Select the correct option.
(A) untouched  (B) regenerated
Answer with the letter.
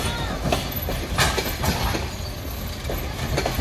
A